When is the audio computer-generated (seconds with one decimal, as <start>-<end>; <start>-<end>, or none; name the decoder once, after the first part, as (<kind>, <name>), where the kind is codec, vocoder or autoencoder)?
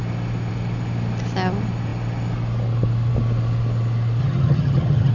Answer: 4.2-5.1 (vocoder, HiFi-GAN)